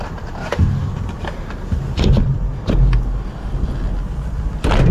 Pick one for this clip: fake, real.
real